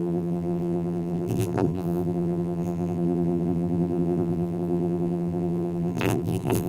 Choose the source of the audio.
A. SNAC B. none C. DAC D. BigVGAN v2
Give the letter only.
D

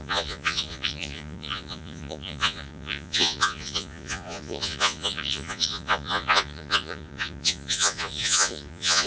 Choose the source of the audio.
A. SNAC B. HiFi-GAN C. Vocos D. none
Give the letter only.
C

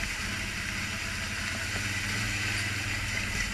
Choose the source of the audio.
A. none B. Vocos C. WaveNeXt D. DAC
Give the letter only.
A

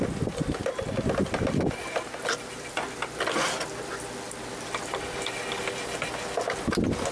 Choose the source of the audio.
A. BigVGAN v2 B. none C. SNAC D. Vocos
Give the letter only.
B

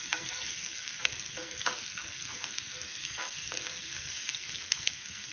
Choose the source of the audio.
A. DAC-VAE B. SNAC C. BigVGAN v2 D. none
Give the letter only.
B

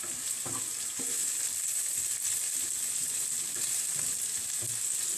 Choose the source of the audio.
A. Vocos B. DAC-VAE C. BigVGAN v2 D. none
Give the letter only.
D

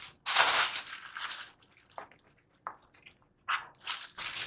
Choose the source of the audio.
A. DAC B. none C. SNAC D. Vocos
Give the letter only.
B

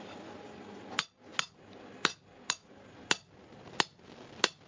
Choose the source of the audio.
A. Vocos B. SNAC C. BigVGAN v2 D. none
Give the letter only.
D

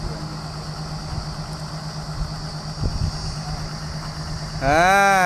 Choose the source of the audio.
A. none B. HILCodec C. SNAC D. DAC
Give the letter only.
A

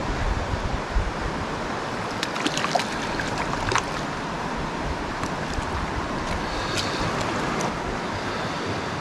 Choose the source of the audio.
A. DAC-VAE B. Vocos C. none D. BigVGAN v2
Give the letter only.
C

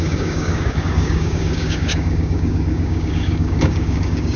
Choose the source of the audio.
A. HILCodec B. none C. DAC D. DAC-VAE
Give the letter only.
C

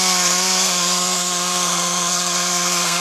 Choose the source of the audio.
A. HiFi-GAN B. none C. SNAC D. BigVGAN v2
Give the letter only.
C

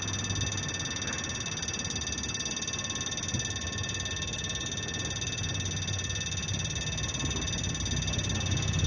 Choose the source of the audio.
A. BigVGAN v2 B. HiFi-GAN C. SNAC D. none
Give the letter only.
D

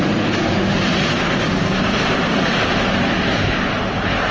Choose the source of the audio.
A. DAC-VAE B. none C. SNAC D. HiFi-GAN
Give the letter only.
B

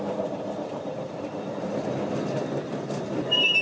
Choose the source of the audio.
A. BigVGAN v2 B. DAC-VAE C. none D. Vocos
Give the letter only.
A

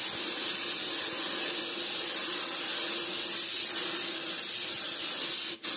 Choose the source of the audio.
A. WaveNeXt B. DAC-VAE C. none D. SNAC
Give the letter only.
C